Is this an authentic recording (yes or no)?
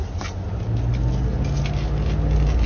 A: yes